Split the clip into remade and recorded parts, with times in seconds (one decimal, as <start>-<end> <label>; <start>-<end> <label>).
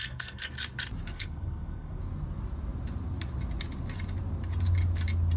0.0-0.5 remade; 0.5-1.1 recorded; 1.1-2.0 remade; 2.0-5.4 recorded